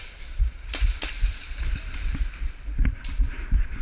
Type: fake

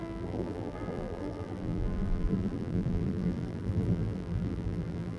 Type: fake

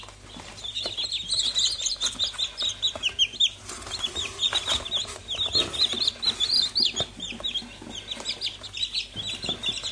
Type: real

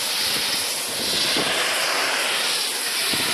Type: real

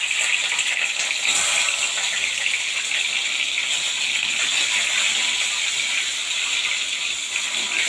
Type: real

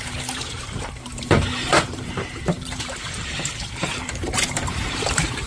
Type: fake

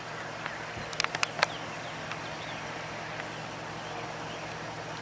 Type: real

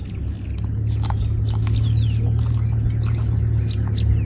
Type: real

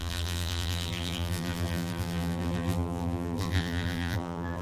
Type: fake